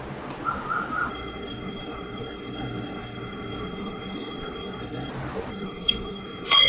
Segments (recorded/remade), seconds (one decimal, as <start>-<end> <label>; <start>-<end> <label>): 0.0-1.1 recorded; 1.1-5.1 remade; 5.1-5.5 recorded; 5.5-6.7 remade